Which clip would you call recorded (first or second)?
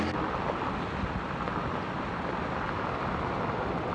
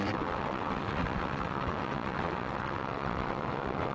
first